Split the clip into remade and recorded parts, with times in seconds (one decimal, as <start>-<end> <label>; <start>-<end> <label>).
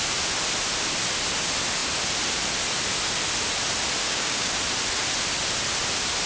0.0-4.0 recorded; 4.0-4.5 remade; 4.5-6.3 recorded